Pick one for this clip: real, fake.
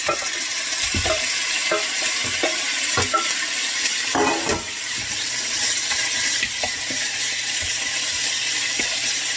fake